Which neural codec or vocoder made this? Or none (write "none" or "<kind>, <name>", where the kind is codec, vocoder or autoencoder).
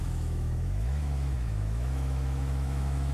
autoencoder, DAC-VAE